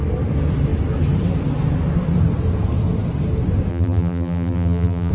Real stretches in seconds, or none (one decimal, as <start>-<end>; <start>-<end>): 0.0-3.7